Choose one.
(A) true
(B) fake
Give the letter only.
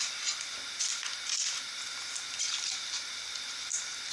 A